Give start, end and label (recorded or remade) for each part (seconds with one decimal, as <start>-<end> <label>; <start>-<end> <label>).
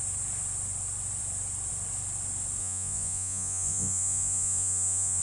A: 0.0-2.6 recorded; 2.6-5.2 remade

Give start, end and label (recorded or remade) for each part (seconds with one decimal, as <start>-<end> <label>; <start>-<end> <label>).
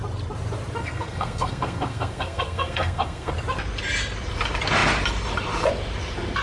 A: 0.0-0.8 recorded; 0.8-3.3 remade; 3.3-6.4 recorded